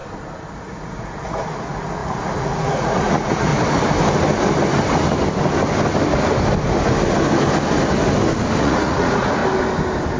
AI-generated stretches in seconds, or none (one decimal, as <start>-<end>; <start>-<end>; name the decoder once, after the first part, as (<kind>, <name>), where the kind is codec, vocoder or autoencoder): 0.6-3.5 (vocoder, Vocos); 8.6-9.4